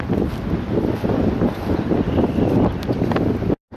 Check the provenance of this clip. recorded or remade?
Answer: recorded